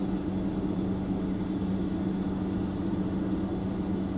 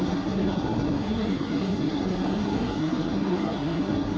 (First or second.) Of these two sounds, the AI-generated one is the second